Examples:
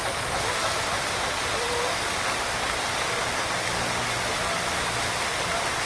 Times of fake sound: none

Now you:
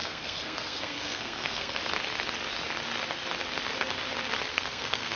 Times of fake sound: 0.0-1.8 (codec, SNAC); 4.5-5.2

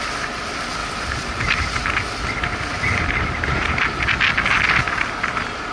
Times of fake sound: none

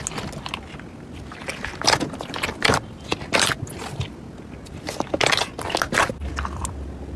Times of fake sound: none

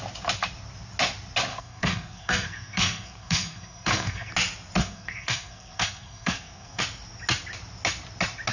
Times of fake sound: 1.5-4.3 (codec, SNAC); 4.8-6.8

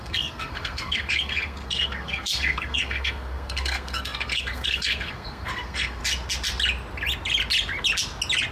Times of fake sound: 0.0-6.0 (codec, SNAC)

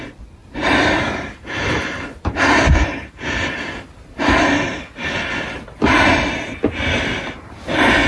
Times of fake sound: 0.4-4.2 (vocoder, BigVGAN v2)